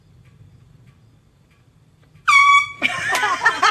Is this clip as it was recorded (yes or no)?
yes